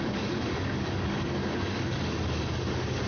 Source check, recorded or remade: remade